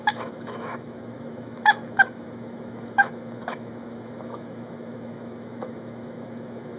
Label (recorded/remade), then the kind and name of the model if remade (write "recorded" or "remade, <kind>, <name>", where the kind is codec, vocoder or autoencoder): remade, autoencoder, DAC-VAE